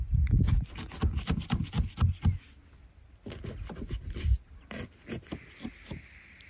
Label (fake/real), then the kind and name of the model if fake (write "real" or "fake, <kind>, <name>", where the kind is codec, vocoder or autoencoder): real